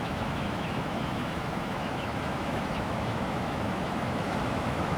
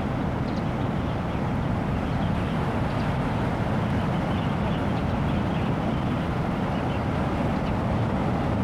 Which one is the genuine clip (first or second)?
second